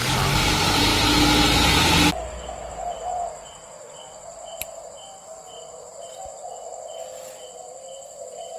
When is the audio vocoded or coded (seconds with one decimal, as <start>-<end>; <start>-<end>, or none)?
0.0-0.9; 2.1-3.1; 3.9-5.9